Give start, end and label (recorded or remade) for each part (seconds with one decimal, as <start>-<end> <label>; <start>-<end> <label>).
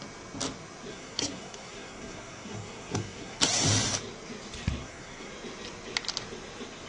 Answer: 0.0-0.9 recorded; 0.9-3.4 remade; 3.4-4.8 recorded; 4.8-5.3 remade; 5.3-6.9 recorded